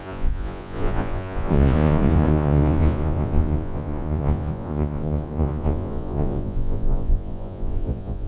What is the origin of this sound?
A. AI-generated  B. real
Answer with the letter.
A